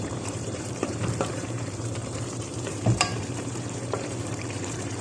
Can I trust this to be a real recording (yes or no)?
no